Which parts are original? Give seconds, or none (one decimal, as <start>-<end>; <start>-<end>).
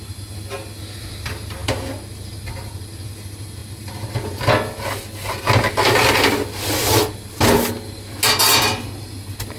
0.0-9.6